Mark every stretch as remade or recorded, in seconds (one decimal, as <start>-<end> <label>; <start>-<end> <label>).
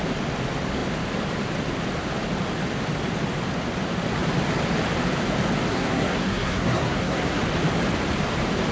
0.0-5.7 recorded; 5.7-7.4 remade; 7.4-8.7 recorded